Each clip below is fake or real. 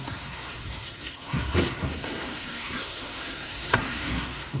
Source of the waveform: fake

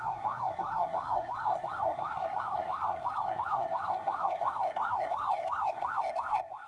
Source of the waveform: fake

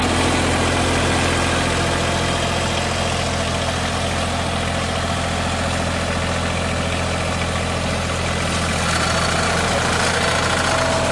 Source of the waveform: real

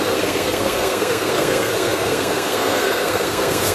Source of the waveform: fake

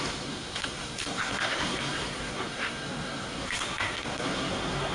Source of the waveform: fake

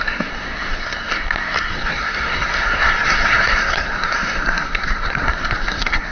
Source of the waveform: fake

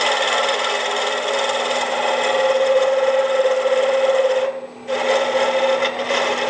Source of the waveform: real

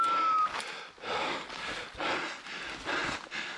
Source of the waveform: real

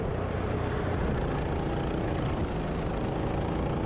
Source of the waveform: real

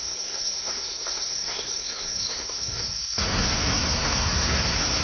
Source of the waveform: fake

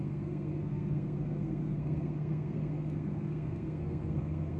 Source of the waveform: fake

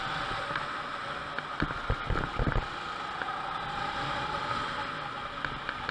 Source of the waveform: real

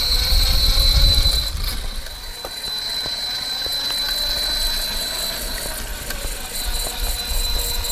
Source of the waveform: real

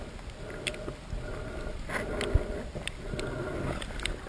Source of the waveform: real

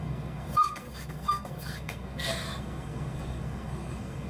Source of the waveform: fake